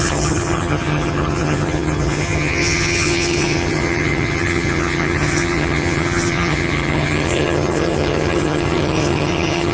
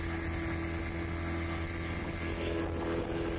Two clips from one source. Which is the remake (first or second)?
first